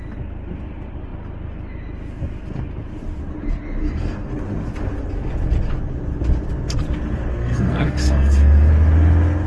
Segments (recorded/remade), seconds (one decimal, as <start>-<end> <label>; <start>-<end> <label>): 0.0-3.8 recorded; 3.8-4.3 remade; 4.3-7.3 recorded; 7.3-8.7 remade; 8.7-9.5 recorded

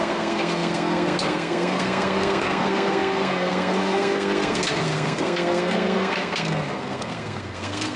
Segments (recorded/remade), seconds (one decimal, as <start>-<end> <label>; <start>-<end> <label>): 0.0-8.0 remade

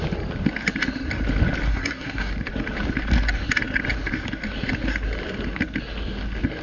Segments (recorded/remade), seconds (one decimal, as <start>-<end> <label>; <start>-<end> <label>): 0.0-1.7 recorded; 1.7-2.3 remade; 2.3-6.6 recorded

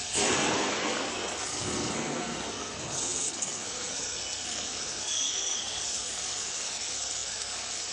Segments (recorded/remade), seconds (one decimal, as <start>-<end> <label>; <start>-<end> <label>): 0.0-7.9 remade

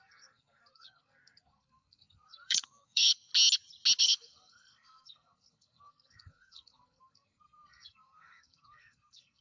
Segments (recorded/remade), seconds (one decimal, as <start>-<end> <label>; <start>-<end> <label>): 0.0-3.3 remade; 3.3-4.0 recorded; 4.0-9.4 remade

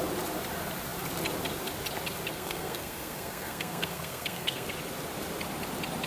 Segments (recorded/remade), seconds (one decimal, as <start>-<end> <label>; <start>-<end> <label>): 0.0-2.3 recorded; 2.3-4.7 remade; 4.7-6.1 recorded

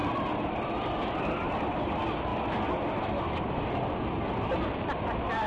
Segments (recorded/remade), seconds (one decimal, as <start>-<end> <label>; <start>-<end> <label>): 0.0-5.5 recorded